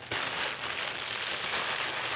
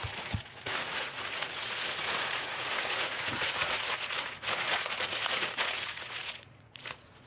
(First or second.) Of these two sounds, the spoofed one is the second